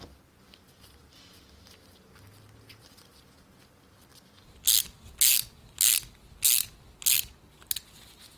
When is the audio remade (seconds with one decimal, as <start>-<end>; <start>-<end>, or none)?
none